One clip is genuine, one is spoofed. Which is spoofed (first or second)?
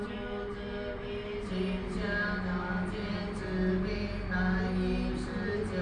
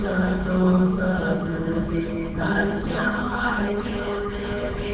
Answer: second